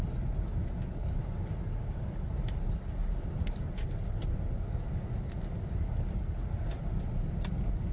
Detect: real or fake real